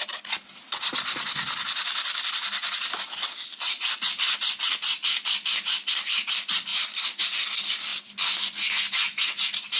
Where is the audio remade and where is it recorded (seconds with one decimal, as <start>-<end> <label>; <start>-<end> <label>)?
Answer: 0.0-6.7 recorded; 6.7-7.4 remade; 7.4-9.8 recorded